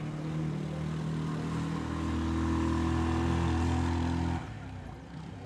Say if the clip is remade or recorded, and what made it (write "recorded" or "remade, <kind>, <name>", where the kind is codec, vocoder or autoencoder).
recorded